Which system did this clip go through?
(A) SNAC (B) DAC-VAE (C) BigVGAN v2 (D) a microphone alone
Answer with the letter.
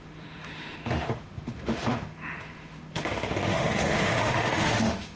B